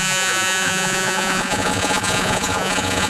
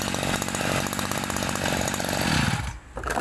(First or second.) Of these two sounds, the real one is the second